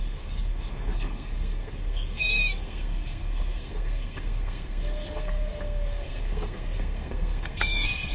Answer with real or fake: fake